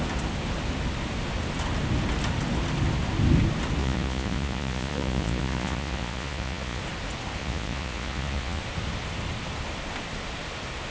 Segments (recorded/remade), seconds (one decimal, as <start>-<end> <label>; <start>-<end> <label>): 0.0-3.8 recorded; 3.8-6.8 remade; 6.8-7.4 recorded; 7.4-8.6 remade; 8.6-10.9 recorded